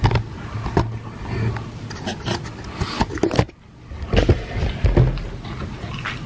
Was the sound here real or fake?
real